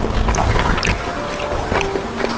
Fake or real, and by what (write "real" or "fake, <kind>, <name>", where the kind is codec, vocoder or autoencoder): real